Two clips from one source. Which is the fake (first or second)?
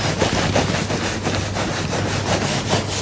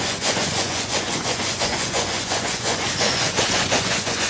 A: second